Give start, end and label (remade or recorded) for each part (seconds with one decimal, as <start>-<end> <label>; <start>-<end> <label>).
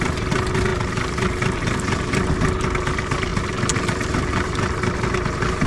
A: 0.0-5.7 recorded